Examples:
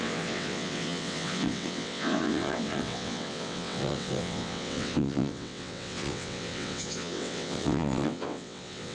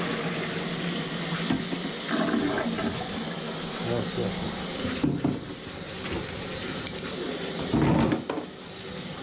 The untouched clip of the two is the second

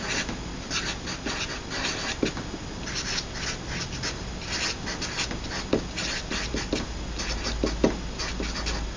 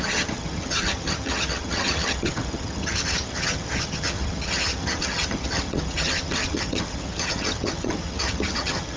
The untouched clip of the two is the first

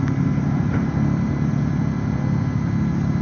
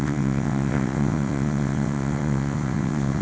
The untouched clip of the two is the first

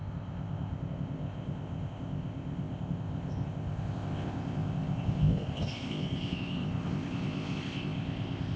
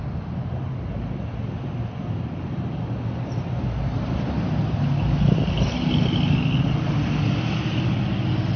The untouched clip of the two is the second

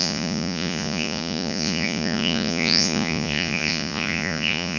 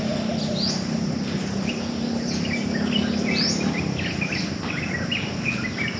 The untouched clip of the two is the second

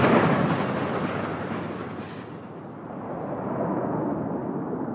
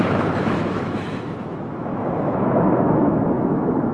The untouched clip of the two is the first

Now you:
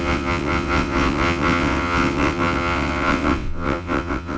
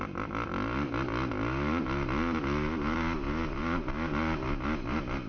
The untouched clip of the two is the second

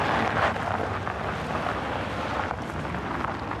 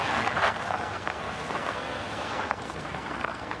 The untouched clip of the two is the first